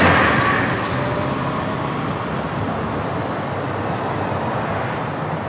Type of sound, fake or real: real